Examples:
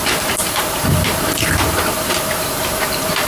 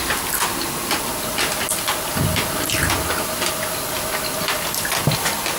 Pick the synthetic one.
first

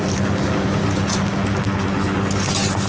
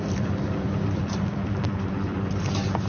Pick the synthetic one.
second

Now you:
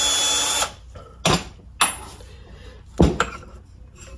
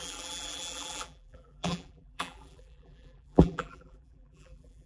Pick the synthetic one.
second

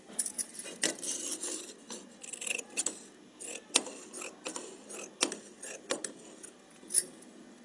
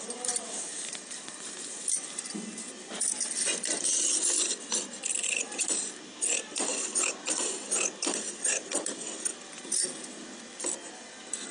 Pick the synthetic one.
second